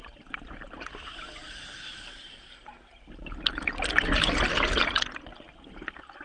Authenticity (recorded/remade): recorded